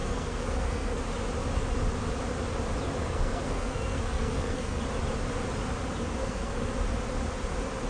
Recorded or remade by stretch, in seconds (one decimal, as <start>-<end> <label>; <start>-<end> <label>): 0.0-1.0 remade; 1.0-3.0 recorded; 3.0-4.8 remade; 4.8-6.2 recorded; 6.2-6.7 remade; 6.7-7.9 recorded

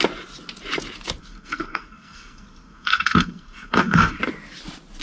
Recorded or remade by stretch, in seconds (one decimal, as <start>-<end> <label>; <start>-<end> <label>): 0.0-1.2 recorded; 1.2-4.2 remade; 4.2-5.0 recorded

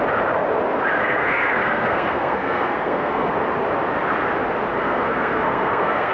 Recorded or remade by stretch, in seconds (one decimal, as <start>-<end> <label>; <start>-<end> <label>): 0.0-1.0 recorded; 1.0-3.3 remade; 3.3-4.7 recorded; 4.7-6.1 remade

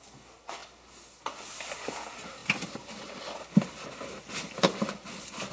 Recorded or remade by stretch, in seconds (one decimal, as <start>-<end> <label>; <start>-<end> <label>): 0.0-5.5 recorded